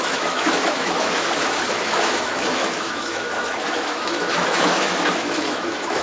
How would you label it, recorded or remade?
remade